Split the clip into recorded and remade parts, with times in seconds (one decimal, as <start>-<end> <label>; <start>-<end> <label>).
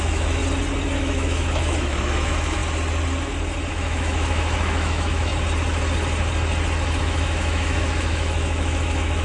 0.0-0.4 remade; 0.4-1.0 recorded; 1.0-2.6 remade; 2.6-3.7 recorded; 3.7-5.3 remade; 5.3-7.0 recorded; 7.0-9.2 remade